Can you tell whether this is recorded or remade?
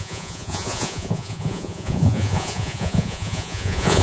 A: remade